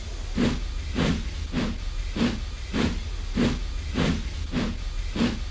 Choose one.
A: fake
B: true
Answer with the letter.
B